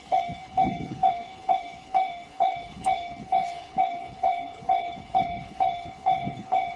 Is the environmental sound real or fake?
fake